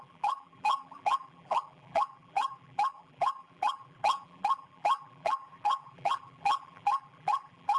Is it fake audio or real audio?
fake